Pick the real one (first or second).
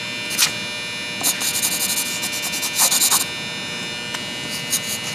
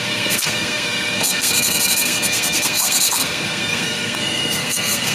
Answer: first